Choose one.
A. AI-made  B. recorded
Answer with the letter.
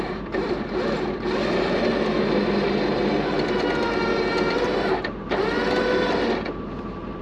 B